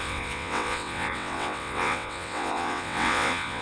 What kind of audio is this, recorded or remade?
remade